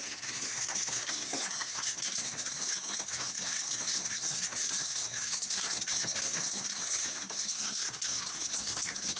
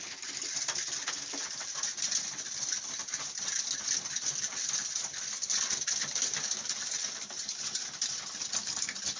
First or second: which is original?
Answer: second